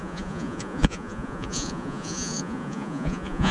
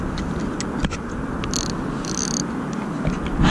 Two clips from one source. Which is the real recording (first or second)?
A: second